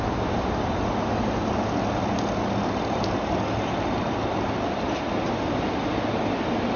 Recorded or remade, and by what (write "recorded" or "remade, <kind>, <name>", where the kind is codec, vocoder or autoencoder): recorded